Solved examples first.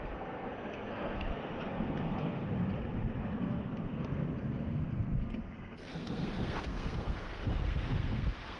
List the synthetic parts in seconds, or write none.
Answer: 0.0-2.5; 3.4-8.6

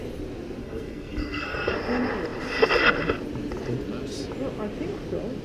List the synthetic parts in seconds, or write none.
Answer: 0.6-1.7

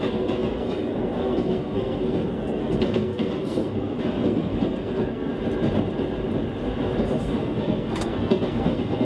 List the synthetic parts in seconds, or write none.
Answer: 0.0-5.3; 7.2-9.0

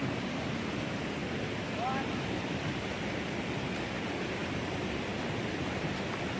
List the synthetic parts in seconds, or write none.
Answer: 0.0-1.2; 2.3-6.4

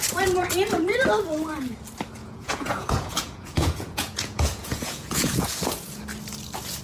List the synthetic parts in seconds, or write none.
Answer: 2.2-6.0

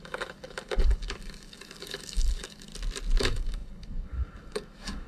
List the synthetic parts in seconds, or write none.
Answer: 0.0-2.7; 3.2-5.1

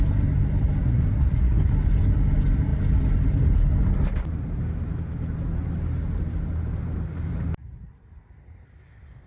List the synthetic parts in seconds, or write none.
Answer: 0.8-1.7

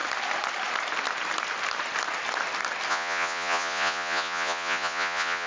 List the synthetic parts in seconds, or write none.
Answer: 2.9-5.5